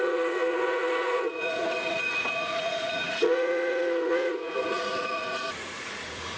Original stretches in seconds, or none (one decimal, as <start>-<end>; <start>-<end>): none